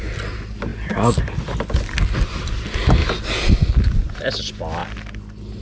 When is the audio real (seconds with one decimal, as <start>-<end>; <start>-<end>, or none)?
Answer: 0.0-5.6